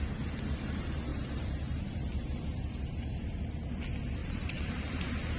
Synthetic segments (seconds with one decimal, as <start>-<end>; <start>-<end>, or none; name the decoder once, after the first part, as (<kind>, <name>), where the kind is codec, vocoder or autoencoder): 1.1-3.5 (vocoder, BigVGAN v2); 4.2-5.0